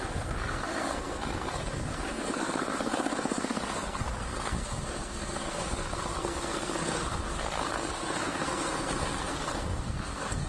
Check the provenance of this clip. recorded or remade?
remade